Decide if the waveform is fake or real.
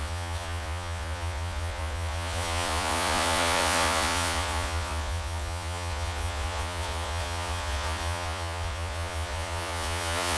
fake